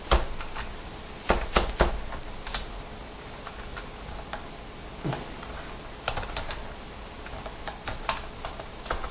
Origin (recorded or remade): recorded